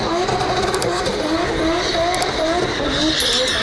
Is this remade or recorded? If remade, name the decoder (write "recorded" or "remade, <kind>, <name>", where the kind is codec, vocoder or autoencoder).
recorded